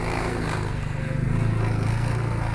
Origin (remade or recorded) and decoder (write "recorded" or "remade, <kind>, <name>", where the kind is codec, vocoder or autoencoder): remade, codec, SNAC